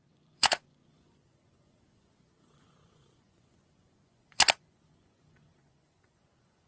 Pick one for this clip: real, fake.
fake